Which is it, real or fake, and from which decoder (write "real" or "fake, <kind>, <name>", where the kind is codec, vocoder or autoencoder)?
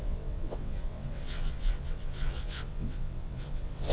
fake, vocoder, WaveNeXt